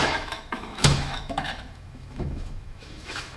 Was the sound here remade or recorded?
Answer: remade